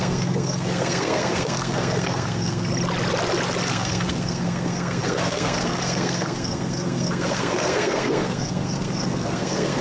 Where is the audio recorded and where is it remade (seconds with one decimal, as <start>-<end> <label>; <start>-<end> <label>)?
0.0-2.7 remade; 2.7-3.7 recorded; 3.7-9.8 remade